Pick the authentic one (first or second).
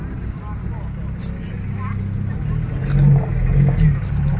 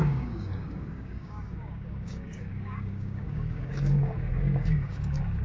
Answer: first